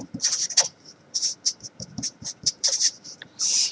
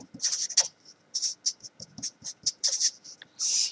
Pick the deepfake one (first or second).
first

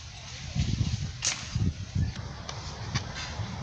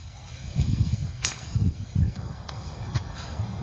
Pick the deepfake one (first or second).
second